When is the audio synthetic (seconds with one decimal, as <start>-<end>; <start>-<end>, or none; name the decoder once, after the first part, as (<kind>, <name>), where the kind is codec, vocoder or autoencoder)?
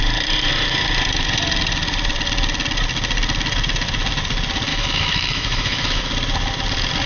4.7-6.0 (autoencoder, DAC-VAE)